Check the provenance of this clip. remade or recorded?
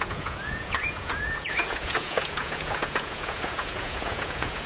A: remade